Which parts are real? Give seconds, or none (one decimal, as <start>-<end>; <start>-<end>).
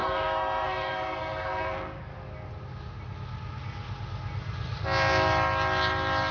2.1-6.3